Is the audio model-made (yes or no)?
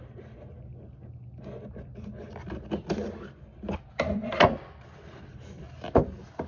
no